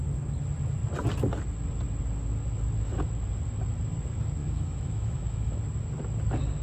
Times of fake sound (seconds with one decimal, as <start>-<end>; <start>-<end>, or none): 4.4-5.6